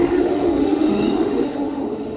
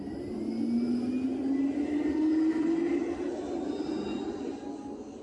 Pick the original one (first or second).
second